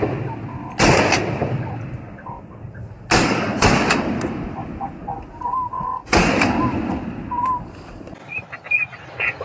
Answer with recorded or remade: recorded